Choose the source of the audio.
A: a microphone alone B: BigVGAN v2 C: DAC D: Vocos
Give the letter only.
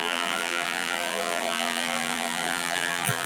B